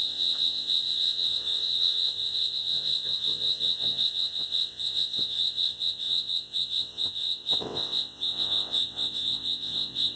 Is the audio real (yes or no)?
no